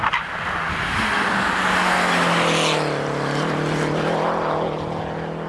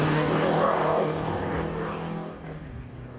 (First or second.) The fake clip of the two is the second